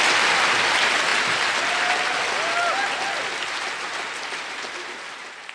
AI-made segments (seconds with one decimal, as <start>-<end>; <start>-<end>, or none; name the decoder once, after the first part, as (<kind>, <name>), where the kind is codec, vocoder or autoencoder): none

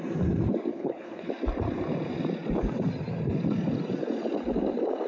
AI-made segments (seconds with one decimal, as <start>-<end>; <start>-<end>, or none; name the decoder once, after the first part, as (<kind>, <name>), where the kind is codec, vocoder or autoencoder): 0.7-1.3 (codec, HILCodec)